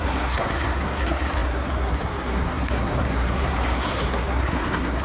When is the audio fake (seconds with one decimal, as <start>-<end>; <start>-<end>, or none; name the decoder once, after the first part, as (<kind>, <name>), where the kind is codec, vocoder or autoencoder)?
0.0-5.0 (codec, SNAC)